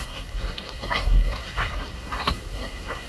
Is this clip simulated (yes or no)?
yes